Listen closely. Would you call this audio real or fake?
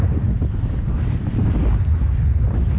real